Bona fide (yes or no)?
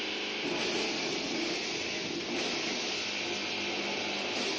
yes